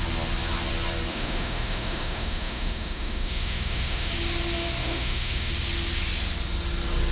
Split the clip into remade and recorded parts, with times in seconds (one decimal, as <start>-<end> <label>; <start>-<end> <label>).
0.0-1.1 recorded; 1.1-4.1 remade; 4.1-4.8 recorded; 4.8-5.5 remade; 5.5-7.1 recorded